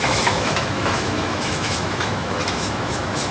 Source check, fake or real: fake